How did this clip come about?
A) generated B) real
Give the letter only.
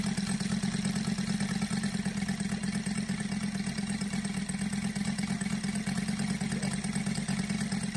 B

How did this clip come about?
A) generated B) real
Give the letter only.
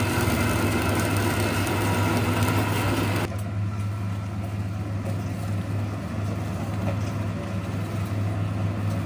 B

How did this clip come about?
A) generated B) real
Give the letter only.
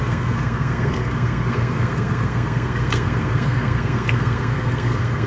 A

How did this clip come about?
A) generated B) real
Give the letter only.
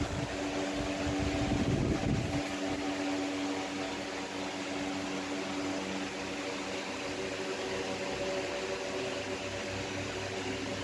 B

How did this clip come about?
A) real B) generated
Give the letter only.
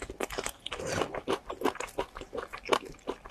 A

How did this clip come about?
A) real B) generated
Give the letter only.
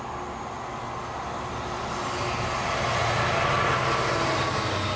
A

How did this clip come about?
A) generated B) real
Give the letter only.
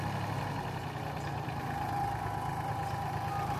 B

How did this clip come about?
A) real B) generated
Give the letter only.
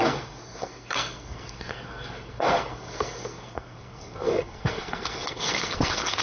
B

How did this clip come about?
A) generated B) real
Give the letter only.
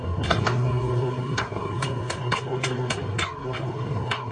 A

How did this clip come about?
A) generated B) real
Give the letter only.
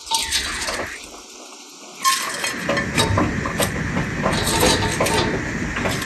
B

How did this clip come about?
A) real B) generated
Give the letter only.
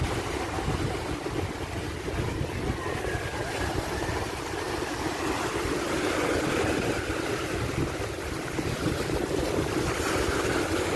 A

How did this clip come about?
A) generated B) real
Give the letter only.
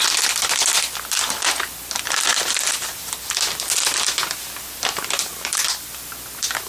B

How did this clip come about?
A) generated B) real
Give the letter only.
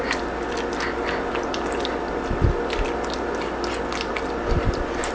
B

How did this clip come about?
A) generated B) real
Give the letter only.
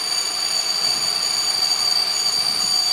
B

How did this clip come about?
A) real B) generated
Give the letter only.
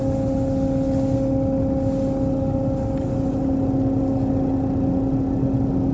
A